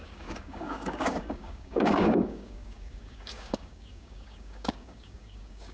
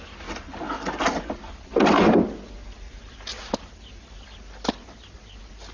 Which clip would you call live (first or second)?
second